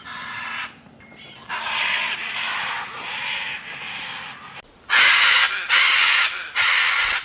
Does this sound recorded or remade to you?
recorded